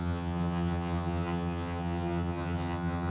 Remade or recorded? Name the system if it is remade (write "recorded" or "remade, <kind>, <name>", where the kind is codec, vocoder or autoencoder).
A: remade, vocoder, HiFi-GAN